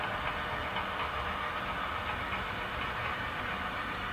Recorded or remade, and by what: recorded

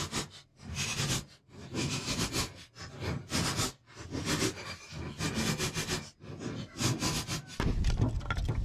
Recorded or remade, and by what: recorded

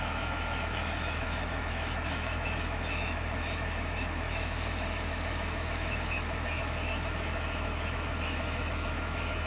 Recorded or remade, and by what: remade, autoencoder, DAC-VAE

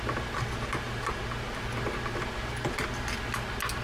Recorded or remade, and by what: recorded